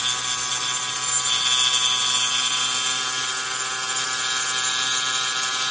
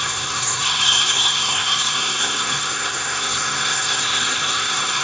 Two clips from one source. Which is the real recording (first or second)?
first